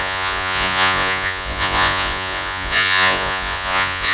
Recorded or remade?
remade